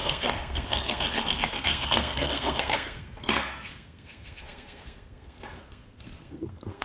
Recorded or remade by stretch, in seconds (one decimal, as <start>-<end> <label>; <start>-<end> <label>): 0.0-6.8 remade